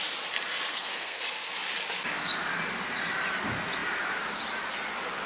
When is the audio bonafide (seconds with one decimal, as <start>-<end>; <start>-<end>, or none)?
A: 0.0-0.7; 1.2-5.3